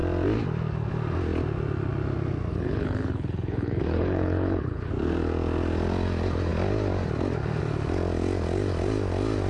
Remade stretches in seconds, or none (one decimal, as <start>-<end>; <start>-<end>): 2.5-4.9